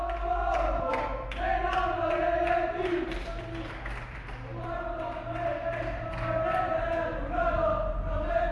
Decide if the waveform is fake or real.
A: real